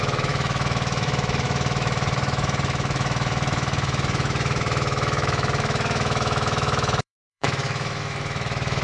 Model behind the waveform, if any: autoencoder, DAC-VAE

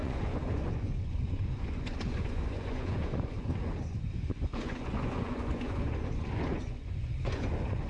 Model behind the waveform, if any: vocoder, Vocos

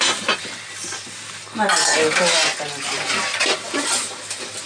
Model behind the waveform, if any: none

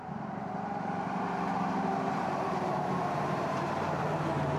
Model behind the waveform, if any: vocoder, BigVGAN v2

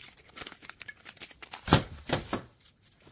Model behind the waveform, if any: none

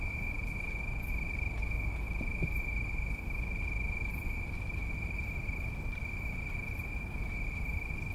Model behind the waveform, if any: none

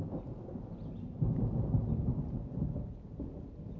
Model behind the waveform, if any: none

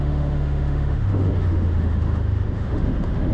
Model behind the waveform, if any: autoencoder, DAC-VAE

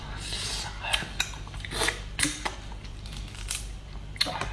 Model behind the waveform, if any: none